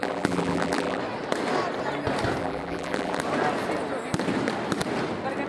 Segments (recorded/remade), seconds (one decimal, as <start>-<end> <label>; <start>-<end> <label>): 0.0-1.0 remade; 1.0-2.4 recorded; 2.4-3.2 remade; 3.2-5.5 recorded